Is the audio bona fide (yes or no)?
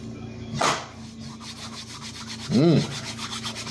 yes